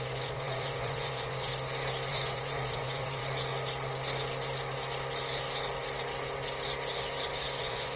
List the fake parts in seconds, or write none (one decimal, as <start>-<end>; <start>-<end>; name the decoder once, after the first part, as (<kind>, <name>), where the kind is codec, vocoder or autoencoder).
0.0-1.5 (vocoder, Vocos); 2.1-3.2; 7.6-8.0